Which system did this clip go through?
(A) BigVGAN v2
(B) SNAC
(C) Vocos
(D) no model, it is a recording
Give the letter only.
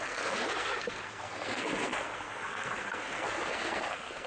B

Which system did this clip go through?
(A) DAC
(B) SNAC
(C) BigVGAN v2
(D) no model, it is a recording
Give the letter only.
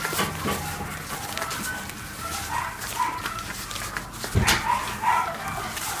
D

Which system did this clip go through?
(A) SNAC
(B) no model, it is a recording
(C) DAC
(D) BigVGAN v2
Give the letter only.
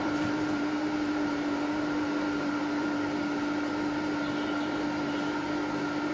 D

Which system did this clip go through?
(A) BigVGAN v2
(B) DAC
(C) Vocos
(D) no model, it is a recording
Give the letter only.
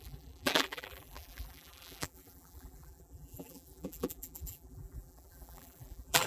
A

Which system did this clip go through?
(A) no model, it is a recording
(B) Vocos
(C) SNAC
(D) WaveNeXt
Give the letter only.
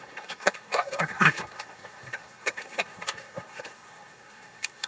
C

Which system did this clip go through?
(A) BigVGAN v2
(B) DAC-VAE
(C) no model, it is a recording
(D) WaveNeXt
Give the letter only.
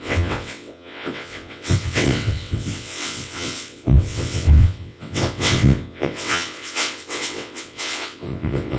D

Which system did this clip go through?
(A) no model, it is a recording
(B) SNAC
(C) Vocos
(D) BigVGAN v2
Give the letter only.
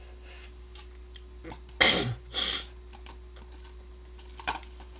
A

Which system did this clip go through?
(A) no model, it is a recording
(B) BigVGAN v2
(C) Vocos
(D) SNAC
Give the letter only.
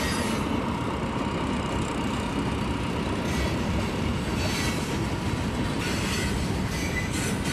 A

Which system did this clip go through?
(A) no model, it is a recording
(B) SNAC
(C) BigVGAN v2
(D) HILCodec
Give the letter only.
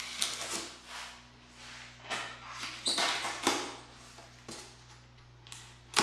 A